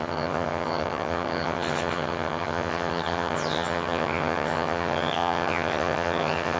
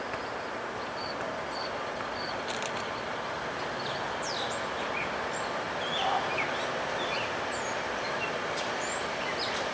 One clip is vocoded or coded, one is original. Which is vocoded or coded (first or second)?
first